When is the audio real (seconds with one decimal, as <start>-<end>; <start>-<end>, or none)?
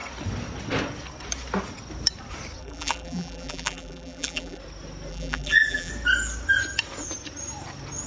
0.0-2.6; 4.6-5.1; 5.9-8.1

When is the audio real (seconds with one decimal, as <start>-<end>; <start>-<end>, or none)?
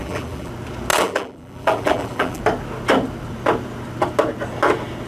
0.5-0.9; 2.4-5.1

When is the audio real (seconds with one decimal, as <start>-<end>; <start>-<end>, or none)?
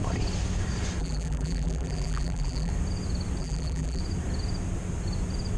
0.0-1.0; 2.7-3.4; 4.0-5.6